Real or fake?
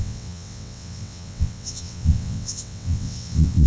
fake